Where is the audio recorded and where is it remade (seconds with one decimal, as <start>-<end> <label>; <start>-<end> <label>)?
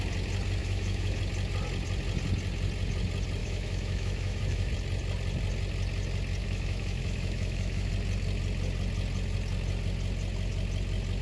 0.0-0.6 recorded; 0.6-1.2 remade; 1.2-3.4 recorded; 3.4-4.7 remade; 4.7-6.4 recorded; 6.4-7.9 remade; 7.9-11.2 recorded